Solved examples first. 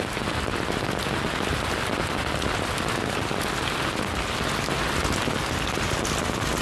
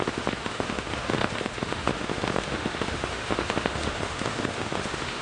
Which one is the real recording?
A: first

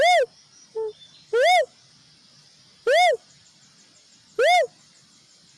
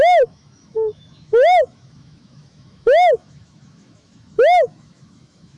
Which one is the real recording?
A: first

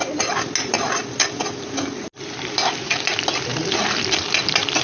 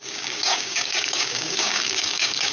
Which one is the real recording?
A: first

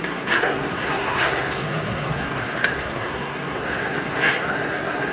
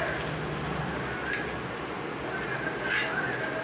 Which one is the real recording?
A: second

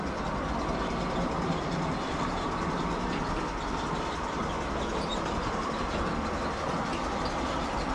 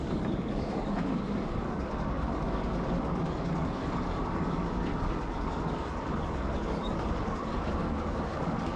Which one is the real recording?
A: first